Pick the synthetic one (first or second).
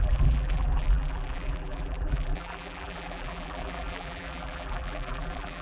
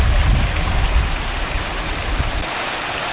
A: first